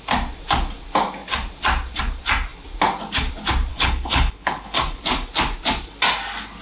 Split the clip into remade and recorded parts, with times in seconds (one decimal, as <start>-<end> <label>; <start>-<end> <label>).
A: 0.0-3.7 recorded; 3.7-5.0 remade; 5.0-6.6 recorded